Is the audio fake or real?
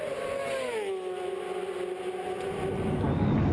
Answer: real